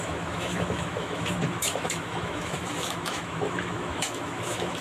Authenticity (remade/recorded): remade